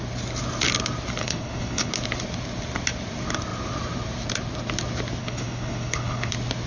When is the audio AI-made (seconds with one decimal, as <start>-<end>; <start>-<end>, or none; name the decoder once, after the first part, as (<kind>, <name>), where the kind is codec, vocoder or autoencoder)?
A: 1.2-1.9 (codec, HILCodec); 5.2-6.3

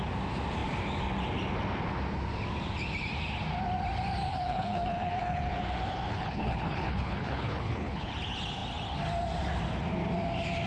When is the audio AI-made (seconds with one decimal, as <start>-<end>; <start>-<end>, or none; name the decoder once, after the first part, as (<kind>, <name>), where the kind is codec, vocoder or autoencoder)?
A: 4.3-5.5 (codec, HILCodec); 6.1-8.1